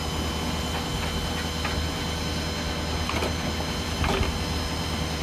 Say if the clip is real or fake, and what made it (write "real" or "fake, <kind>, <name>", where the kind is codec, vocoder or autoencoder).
real